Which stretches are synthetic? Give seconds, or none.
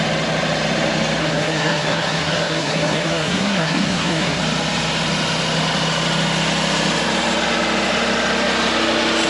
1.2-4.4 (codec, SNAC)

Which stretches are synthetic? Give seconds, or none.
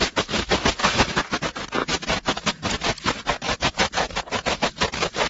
0.8-1.4 (autoencoder, DAC-VAE)